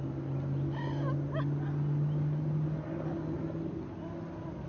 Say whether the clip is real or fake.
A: real